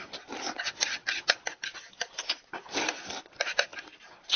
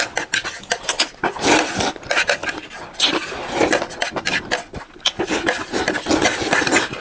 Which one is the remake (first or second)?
first